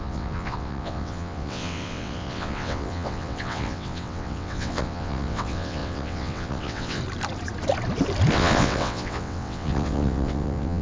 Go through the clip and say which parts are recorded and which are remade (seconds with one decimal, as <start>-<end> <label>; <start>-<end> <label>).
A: 0.0-7.0 remade; 7.0-8.3 recorded; 8.3-10.8 remade